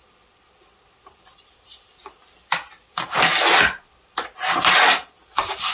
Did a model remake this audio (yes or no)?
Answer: yes